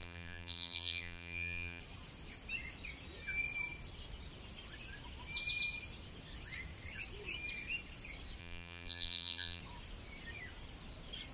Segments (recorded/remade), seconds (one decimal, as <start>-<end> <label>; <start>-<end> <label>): 0.0-1.8 remade; 1.8-8.4 recorded; 8.4-9.6 remade; 9.6-11.3 recorded